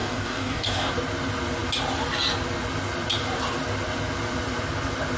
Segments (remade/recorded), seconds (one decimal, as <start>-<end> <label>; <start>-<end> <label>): 0.0-0.9 remade; 0.9-5.2 recorded